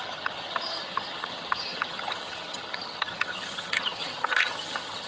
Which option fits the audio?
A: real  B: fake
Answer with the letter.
B